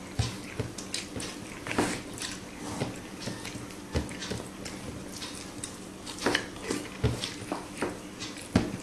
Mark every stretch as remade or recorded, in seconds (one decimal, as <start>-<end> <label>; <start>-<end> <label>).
0.0-8.8 recorded